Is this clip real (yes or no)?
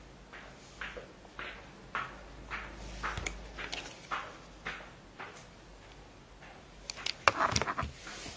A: yes